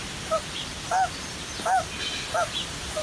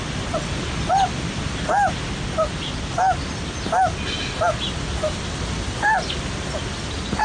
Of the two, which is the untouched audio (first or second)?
second